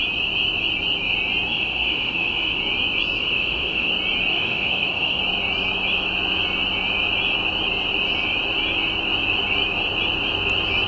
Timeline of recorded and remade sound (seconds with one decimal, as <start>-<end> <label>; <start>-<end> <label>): 0.0-1.5 recorded; 1.5-2.6 remade; 2.6-3.2 recorded; 3.2-3.9 remade; 3.9-4.3 recorded; 4.3-5.2 remade; 5.2-10.9 recorded